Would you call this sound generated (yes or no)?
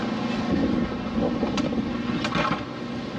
no